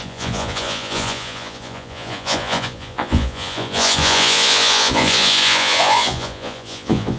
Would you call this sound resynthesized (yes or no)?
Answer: yes